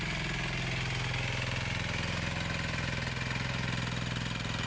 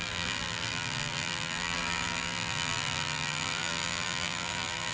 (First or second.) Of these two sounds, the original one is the first